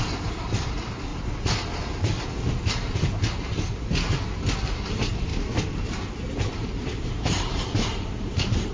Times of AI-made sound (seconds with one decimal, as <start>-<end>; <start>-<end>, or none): 0.0-1.1; 4.7-5.3; 6.5-8.7